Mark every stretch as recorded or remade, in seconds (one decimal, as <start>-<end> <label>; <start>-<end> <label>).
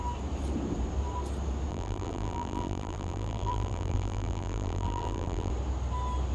0.0-1.7 recorded; 1.7-5.5 remade; 5.5-6.3 recorded